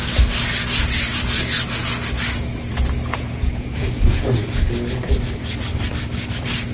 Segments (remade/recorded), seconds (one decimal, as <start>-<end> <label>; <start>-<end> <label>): 0.0-3.1 recorded; 3.1-4.3 remade; 4.3-6.7 recorded